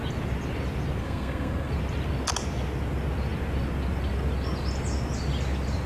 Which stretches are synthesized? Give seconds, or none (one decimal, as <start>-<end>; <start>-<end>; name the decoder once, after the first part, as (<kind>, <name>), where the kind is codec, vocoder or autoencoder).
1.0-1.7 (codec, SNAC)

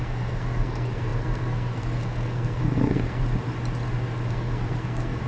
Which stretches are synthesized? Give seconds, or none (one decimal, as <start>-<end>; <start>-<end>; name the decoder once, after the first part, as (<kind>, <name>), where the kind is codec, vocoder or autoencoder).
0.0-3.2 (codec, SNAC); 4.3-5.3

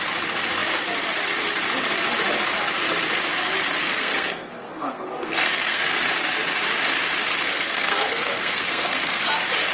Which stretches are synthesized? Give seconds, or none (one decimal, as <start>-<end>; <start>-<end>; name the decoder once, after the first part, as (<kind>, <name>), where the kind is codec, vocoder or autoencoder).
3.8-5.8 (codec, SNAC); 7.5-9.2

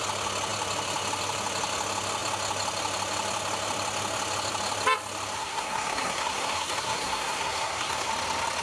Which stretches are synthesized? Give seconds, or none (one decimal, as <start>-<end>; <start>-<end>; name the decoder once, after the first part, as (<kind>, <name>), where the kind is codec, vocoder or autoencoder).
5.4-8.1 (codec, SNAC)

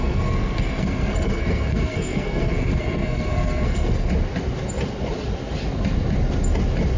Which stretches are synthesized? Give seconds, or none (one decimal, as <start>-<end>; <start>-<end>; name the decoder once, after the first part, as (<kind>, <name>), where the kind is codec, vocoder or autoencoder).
0.0-4.1 (codec, SNAC)